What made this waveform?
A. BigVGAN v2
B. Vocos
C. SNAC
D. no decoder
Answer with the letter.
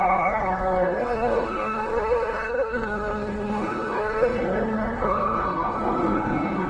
C